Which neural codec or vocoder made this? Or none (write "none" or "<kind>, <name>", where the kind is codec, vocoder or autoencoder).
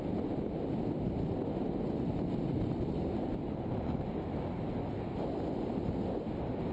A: none